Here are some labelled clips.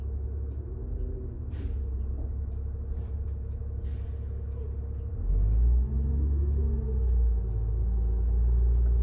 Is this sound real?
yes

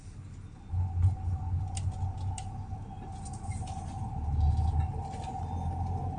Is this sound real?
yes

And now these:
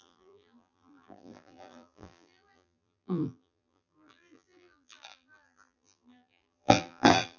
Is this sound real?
no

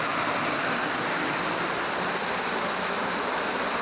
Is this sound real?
yes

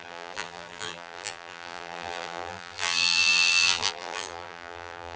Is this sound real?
no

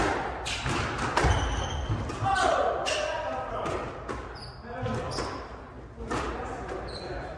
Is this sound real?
yes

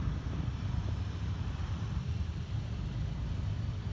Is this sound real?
no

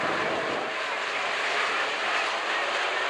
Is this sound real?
no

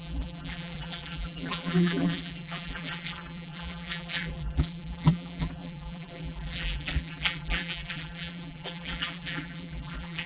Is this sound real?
no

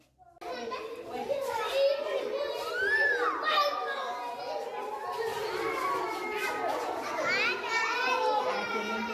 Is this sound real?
yes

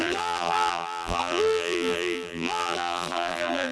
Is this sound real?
no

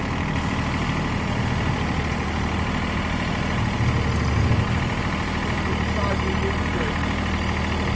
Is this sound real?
yes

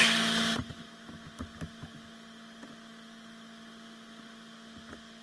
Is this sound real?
yes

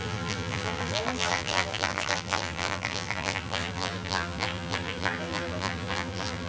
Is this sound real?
no